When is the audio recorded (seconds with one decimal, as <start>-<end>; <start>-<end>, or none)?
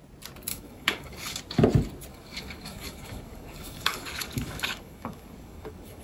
0.0-0.5; 1.4-2.1